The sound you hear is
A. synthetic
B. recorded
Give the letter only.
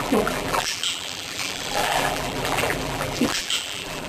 A